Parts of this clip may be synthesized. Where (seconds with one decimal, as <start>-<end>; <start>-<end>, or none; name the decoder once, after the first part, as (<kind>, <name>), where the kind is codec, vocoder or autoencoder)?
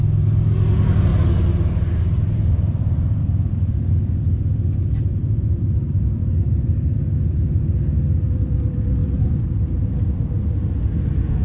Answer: 1.1-4.0 (vocoder, BigVGAN v2); 5.1-7.7; 9.0-10.5